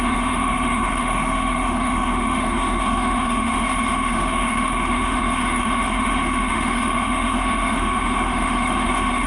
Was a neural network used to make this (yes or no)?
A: yes